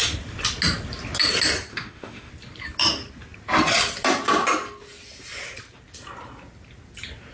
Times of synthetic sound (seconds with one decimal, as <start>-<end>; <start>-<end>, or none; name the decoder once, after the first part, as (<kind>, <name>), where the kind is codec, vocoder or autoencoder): 1.7-2.3 (autoencoder, DAC-VAE)